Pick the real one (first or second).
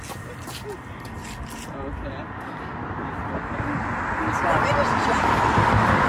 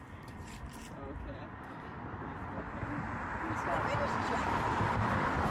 first